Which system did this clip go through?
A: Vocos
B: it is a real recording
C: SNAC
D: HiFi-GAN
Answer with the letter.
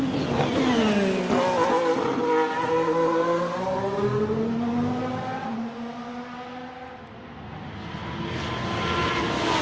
B